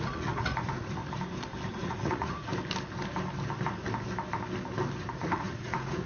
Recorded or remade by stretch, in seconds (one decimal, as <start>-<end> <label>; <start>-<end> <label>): 0.0-1.0 remade; 1.0-1.7 recorded; 1.7-2.5 remade; 2.5-5.1 recorded; 5.1-6.1 remade